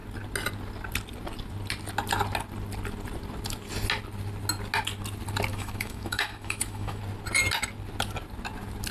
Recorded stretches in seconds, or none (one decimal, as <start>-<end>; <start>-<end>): 0.0-5.5; 7.0-8.9